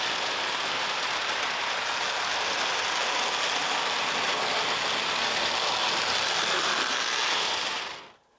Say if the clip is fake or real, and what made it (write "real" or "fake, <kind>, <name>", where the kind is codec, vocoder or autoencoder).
real